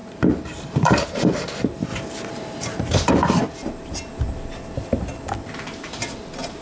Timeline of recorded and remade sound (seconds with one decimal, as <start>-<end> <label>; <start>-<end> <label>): 0.0-1.4 remade; 1.4-1.9 recorded; 1.9-3.1 remade; 3.1-6.6 recorded